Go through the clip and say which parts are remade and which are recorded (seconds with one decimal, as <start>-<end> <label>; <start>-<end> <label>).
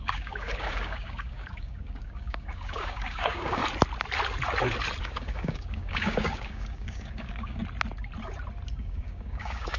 0.0-3.6 remade; 3.6-5.0 recorded; 5.0-7.6 remade; 7.6-8.7 recorded; 8.7-9.8 remade